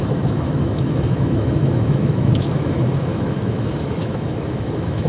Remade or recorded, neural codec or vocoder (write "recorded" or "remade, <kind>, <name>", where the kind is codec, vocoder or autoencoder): remade, autoencoder, DAC-VAE